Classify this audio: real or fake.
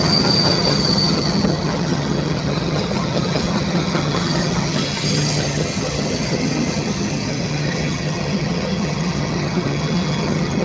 fake